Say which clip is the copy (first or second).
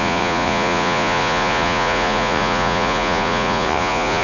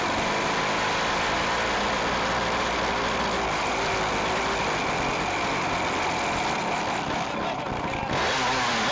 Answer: first